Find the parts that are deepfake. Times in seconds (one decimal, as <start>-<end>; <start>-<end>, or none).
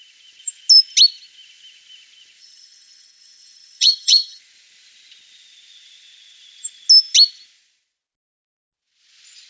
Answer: 2.4-4.4